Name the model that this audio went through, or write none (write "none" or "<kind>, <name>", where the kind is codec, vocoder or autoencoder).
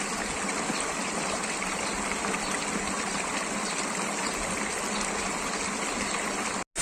none